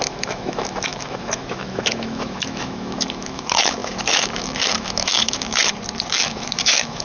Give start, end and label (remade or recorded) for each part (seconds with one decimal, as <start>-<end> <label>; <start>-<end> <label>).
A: 0.0-5.6 remade; 5.6-6.1 recorded; 6.1-7.0 remade